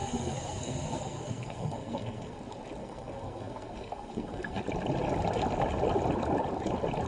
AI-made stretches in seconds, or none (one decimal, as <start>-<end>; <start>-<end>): 0.0-2.4; 2.8-4.6